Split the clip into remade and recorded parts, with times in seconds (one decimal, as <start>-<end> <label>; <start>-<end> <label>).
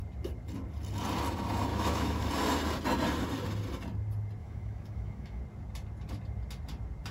0.0-1.7 recorded; 1.7-2.3 remade; 2.3-4.4 recorded; 4.4-5.4 remade; 5.4-7.1 recorded